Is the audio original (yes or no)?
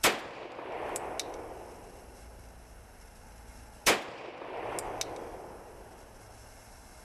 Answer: yes